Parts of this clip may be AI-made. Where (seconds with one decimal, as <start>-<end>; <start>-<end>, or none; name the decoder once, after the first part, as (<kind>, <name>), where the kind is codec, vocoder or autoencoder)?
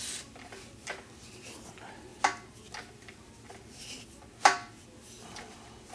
none